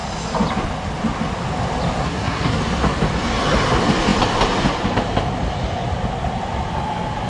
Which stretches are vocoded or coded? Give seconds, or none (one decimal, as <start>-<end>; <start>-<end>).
2.0-2.6